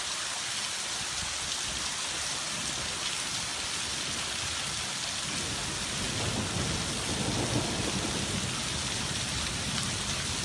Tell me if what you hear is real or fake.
real